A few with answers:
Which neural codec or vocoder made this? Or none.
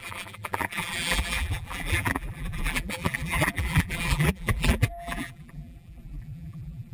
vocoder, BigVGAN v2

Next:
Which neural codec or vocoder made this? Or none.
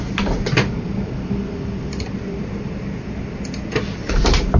none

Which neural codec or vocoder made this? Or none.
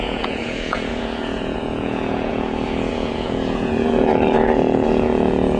vocoder, Vocos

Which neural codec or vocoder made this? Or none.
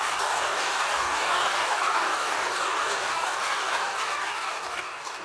codec, DAC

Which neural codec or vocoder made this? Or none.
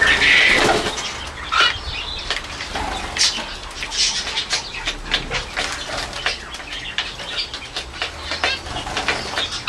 none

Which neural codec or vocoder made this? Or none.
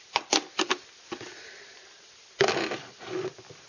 none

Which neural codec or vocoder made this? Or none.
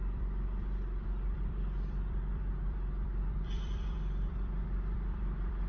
vocoder, BigVGAN v2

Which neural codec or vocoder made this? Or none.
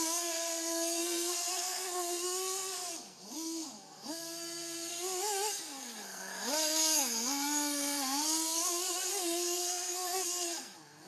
codec, SNAC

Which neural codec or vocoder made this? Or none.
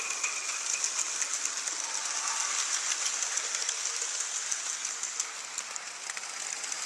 none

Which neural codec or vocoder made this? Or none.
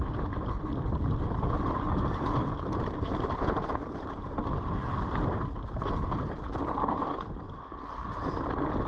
none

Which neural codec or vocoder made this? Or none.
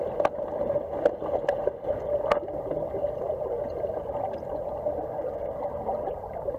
none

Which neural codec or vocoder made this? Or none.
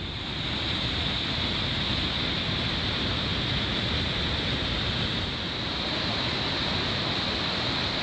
none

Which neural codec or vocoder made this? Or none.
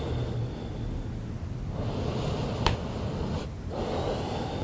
none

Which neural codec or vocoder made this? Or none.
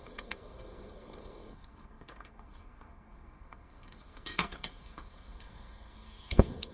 codec, SNAC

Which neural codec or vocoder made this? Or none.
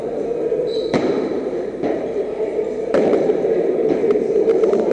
vocoder, BigVGAN v2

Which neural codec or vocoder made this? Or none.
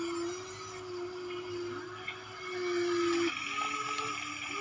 none